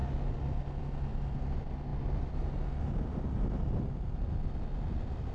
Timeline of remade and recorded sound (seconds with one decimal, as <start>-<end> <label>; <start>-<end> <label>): 0.0-5.3 recorded